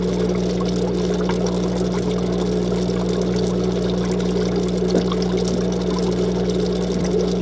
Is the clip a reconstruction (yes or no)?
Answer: no